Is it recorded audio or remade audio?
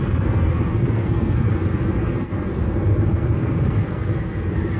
remade